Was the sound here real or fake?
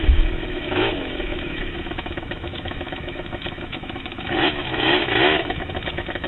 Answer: fake